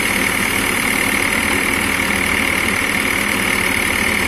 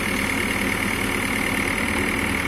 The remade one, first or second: first